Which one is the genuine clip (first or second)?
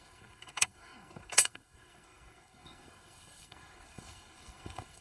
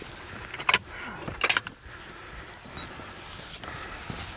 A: second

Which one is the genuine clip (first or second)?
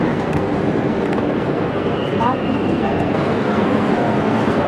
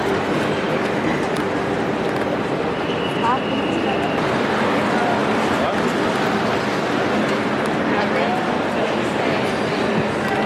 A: second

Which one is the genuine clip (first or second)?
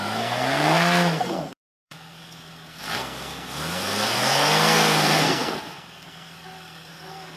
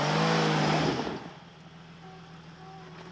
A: second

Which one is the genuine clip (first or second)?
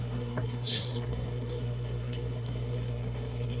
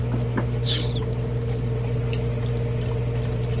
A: second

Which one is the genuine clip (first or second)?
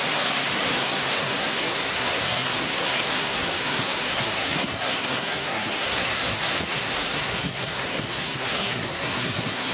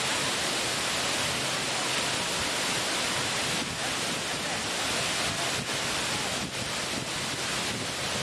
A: second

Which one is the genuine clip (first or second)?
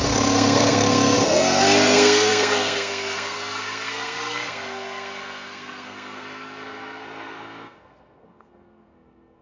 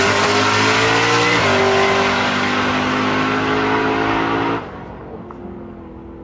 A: second